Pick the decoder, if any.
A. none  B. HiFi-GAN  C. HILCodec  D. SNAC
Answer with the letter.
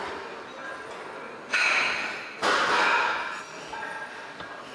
A